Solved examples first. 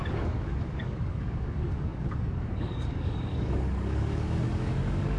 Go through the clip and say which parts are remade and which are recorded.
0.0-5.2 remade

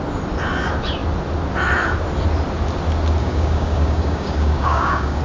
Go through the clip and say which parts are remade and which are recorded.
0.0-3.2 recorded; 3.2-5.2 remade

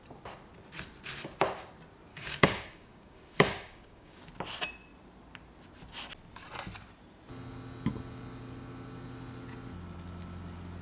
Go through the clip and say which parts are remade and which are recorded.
0.0-2.1 recorded; 2.1-4.2 remade; 4.2-10.8 recorded

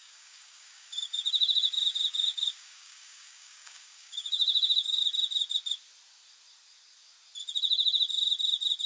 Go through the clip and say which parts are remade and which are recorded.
0.0-5.0 remade; 5.0-8.9 recorded

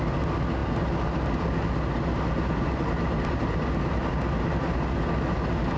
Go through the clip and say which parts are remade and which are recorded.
0.0-5.8 recorded

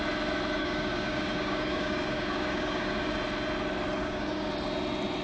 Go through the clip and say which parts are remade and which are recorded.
0.0-0.6 recorded; 0.6-3.1 remade; 3.1-4.0 recorded; 4.0-4.5 remade; 4.5-5.2 recorded

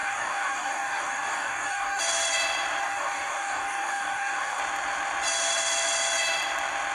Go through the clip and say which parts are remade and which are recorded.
0.0-2.0 remade; 2.0-2.8 recorded; 2.8-4.6 remade; 4.6-6.9 recorded

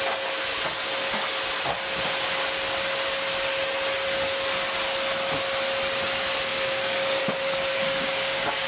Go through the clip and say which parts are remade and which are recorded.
0.0-6.5 recorded; 6.5-7.2 remade; 7.2-7.7 recorded; 7.7-8.7 remade